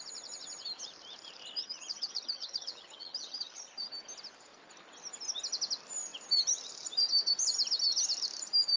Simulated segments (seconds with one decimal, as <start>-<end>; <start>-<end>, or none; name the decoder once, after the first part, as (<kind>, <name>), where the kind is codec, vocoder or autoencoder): 1.6-3.9 (vocoder, HiFi-GAN)